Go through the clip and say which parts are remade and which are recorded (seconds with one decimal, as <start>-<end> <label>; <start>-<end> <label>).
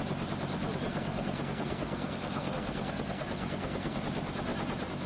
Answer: 0.0-0.9 recorded; 0.9-4.0 remade; 4.0-5.1 recorded